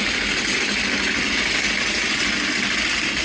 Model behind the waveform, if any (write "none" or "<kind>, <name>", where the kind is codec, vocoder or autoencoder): none